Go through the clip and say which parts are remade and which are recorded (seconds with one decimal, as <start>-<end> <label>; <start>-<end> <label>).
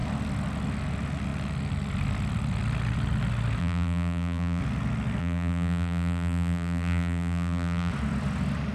0.0-3.6 recorded; 3.6-4.6 remade; 4.6-5.2 recorded; 5.2-7.9 remade; 7.9-8.7 recorded